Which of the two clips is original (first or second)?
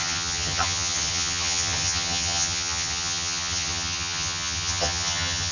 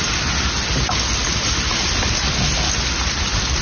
second